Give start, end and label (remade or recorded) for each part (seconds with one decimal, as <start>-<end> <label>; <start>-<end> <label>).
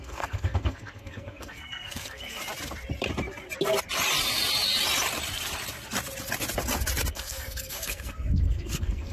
0.0-2.4 remade; 2.4-7.1 recorded; 7.1-9.1 remade